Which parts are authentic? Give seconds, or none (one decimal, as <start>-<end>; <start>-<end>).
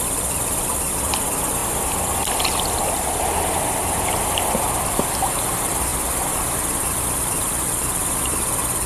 1.6-5.3; 5.9-7.3